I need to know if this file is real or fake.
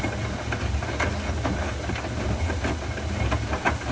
real